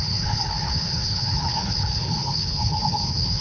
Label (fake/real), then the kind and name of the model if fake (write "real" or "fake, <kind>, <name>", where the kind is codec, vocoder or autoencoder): fake, codec, HILCodec